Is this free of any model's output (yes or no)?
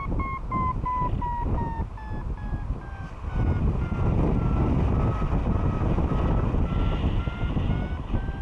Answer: yes